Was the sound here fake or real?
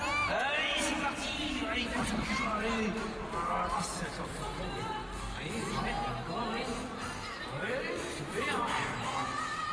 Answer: real